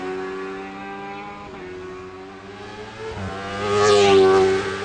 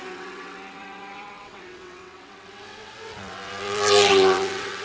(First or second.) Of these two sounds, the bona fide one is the first